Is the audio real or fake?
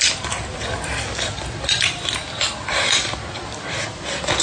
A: fake